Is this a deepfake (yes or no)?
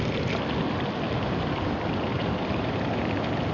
no